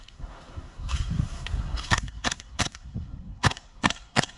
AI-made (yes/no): yes